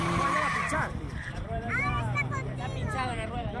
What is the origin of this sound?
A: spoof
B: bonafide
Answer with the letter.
A